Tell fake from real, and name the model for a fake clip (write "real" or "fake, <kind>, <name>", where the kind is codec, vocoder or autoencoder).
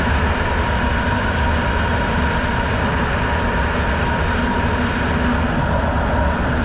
real